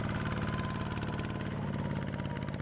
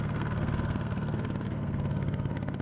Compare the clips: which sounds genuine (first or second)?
first